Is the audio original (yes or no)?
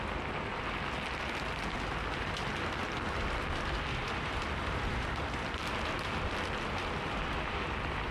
yes